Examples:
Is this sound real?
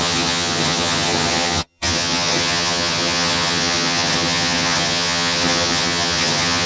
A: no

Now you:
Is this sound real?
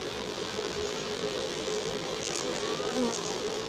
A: no